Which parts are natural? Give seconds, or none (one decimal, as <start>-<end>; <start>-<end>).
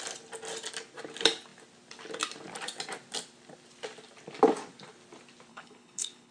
0.0-5.5